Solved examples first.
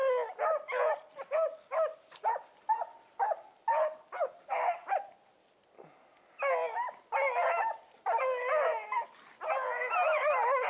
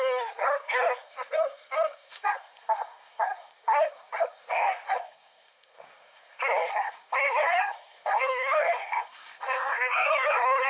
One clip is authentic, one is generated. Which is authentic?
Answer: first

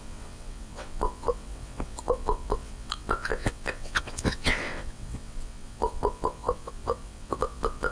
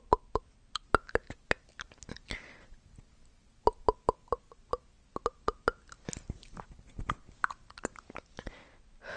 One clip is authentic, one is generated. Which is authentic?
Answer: second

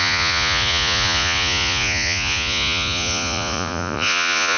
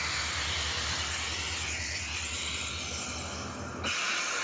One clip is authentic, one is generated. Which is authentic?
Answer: second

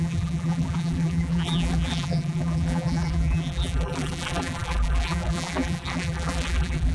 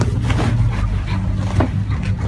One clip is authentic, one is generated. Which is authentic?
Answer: second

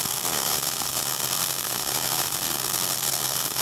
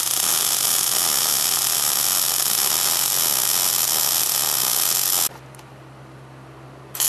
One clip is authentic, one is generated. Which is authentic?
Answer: second